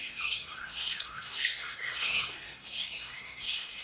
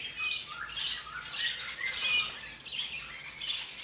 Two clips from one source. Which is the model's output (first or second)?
first